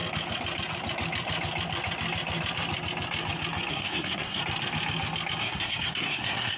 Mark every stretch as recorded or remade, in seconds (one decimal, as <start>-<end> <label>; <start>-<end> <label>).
0.0-3.7 recorded; 3.7-4.4 remade; 4.4-5.4 recorded; 5.4-6.6 remade